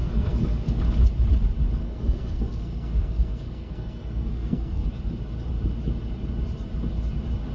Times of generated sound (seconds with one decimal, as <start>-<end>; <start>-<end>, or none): 0.0-0.8; 1.8-4.9